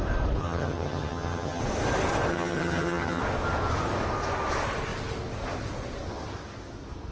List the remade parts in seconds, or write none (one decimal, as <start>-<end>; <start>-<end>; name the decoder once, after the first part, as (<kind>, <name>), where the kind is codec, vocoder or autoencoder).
0.4-1.6 (vocoder, HiFi-GAN); 2.3-3.2